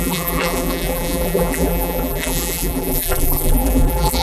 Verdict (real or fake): fake